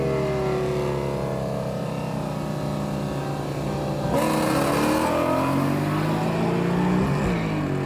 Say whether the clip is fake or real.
real